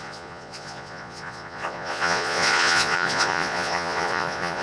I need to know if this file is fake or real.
fake